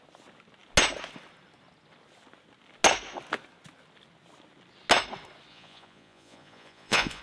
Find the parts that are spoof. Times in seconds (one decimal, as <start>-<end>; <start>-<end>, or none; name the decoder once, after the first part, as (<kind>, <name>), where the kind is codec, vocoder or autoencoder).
5.5-7.2 (vocoder, Vocos)